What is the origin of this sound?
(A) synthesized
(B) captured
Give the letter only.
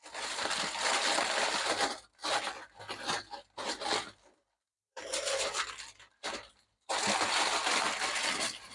B